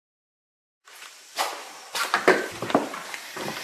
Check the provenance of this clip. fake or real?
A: fake